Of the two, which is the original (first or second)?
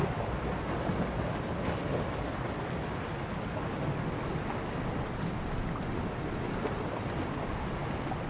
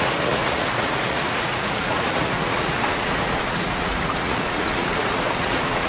first